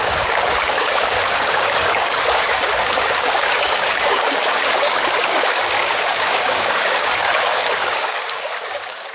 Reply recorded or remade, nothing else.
remade